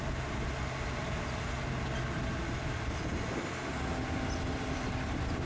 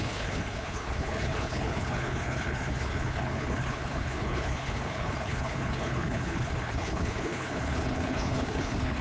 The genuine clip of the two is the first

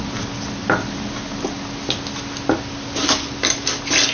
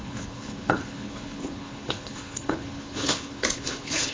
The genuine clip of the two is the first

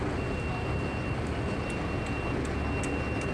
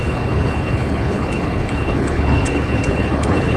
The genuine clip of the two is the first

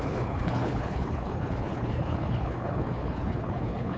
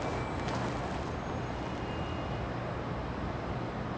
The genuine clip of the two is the second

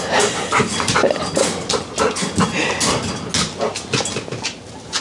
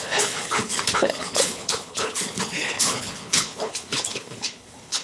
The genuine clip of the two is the first